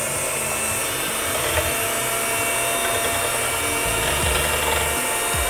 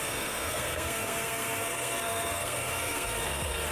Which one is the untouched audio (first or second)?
first